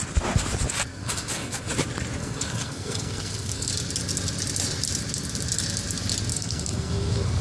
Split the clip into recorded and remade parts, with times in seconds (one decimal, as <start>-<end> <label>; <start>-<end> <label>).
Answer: 0.0-0.9 recorded; 0.9-1.7 remade; 1.7-2.2 recorded; 2.2-3.7 remade; 3.7-6.3 recorded; 6.3-7.4 remade